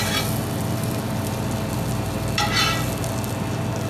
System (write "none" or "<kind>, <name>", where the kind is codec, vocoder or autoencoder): none